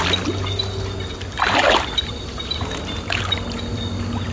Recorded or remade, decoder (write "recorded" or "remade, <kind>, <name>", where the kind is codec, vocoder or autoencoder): recorded